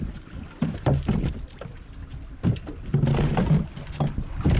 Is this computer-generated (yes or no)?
no